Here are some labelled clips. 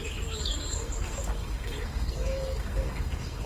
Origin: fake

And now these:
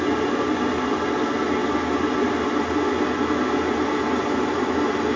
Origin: real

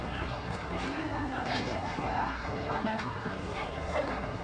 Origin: fake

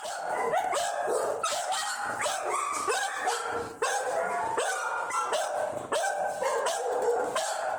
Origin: real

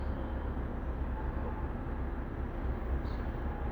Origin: real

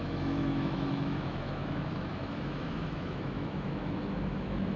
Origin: fake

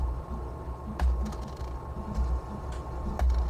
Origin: real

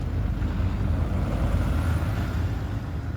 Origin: real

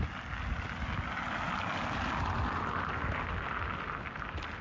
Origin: real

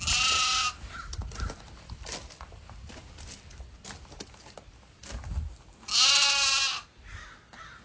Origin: real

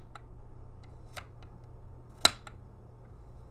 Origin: real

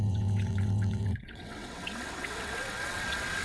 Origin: fake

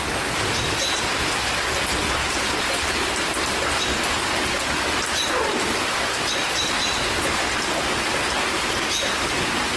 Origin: real